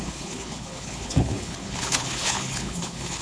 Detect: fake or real fake